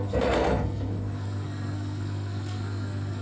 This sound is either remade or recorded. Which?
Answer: remade